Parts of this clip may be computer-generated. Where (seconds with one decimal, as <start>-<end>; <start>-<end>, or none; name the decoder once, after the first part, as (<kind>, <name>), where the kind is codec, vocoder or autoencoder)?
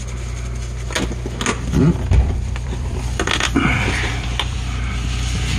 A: 1.5-4.9 (vocoder, BigVGAN v2)